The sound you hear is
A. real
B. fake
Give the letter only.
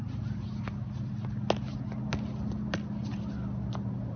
A